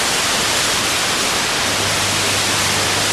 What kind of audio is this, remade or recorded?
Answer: recorded